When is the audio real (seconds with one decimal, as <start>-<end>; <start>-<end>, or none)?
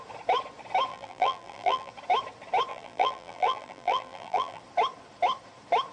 0.0-0.9; 1.9-2.7; 4.6-5.9